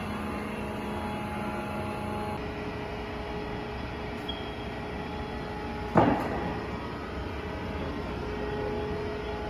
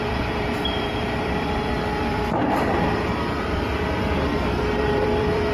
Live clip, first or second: first